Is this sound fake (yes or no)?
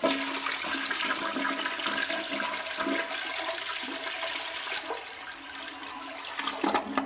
no